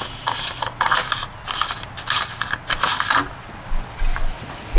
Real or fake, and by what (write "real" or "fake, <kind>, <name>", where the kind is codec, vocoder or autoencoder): real